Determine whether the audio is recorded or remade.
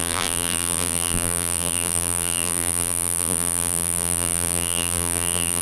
remade